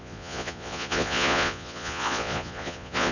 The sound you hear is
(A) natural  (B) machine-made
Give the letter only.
B